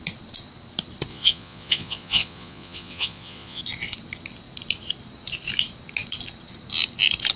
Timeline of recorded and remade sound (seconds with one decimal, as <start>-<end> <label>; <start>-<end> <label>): 0.0-1.1 recorded; 1.1-3.6 remade; 3.6-7.4 recorded

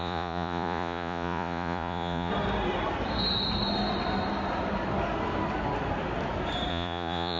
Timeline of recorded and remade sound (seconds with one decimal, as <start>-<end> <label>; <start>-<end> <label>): 0.0-2.3 remade; 2.3-6.7 recorded; 6.7-7.4 remade

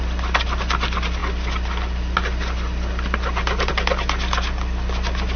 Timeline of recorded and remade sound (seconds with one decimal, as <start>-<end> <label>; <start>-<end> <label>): 0.0-5.4 recorded

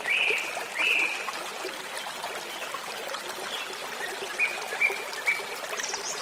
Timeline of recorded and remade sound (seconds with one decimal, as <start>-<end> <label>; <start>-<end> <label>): 0.0-6.2 recorded

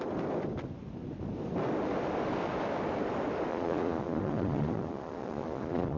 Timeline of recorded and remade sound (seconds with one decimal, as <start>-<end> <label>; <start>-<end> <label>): 0.0-3.5 recorded; 3.5-6.0 remade

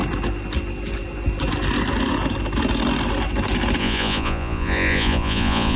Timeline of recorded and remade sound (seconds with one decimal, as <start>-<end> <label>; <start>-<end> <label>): 0.0-3.8 recorded; 3.8-5.8 remade

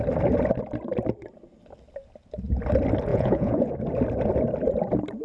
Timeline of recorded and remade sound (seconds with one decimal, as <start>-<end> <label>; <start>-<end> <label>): 0.0-3.1 recorded; 3.1-3.7 remade; 3.7-5.2 recorded

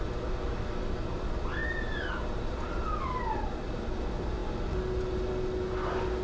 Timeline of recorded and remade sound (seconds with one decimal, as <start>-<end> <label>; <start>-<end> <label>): 0.0-6.2 recorded